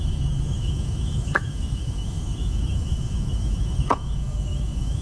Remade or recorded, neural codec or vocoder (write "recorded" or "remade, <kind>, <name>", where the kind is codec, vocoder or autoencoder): remade, autoencoder, DAC-VAE